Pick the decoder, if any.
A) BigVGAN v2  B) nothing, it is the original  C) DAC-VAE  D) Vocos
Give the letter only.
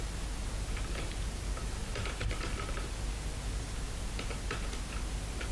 B